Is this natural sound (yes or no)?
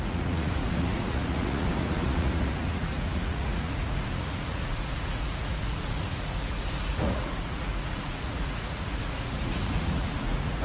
no